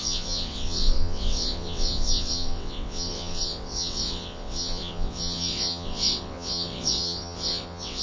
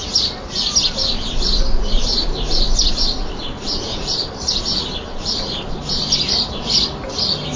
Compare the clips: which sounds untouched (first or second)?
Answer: second